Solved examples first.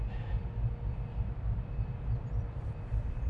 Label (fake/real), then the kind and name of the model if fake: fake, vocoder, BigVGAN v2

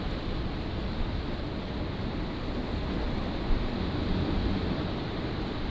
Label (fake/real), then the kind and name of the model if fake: real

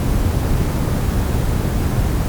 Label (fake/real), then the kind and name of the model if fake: real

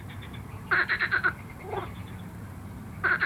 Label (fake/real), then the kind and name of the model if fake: fake, vocoder, BigVGAN v2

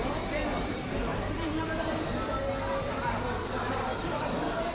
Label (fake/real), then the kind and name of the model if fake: fake, vocoder, BigVGAN v2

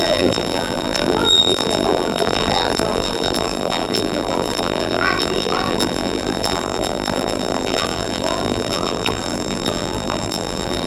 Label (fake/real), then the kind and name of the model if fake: fake, vocoder, BigVGAN v2